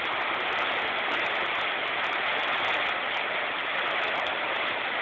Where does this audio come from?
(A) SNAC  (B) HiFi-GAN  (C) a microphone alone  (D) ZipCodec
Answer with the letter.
C